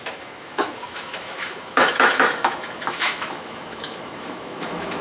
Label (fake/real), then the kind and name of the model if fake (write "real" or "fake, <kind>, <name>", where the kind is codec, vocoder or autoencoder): fake, autoencoder, DAC-VAE